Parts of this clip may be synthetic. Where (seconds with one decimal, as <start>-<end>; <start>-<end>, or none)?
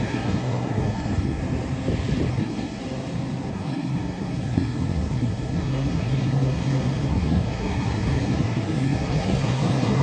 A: 0.0-1.4; 2.3-2.8; 3.5-10.0